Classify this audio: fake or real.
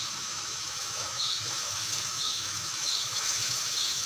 fake